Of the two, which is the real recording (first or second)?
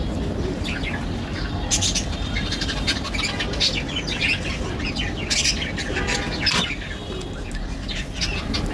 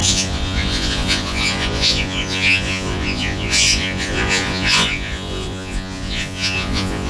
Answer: first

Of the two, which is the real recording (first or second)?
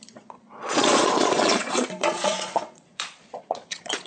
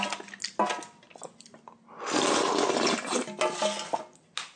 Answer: second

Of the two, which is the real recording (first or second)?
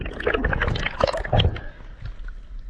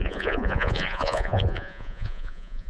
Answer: first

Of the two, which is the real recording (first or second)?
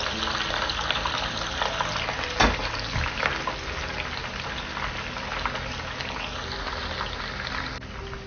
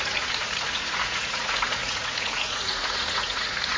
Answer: first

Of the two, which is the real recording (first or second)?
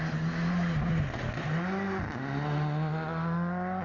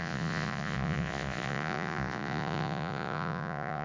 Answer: first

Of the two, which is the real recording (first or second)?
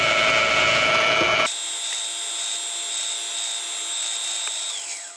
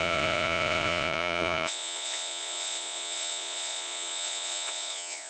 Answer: first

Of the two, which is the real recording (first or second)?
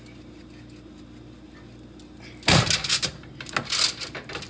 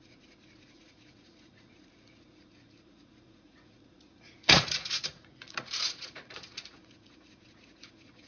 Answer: first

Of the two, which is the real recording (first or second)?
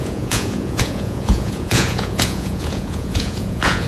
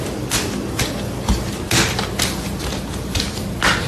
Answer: second